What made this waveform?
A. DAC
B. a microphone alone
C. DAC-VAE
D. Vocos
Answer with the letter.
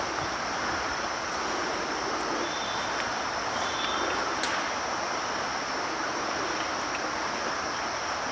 B